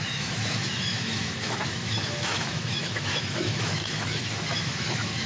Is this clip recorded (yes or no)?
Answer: no